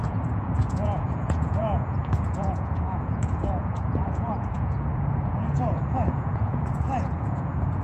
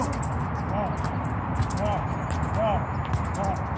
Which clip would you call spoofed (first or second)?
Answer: first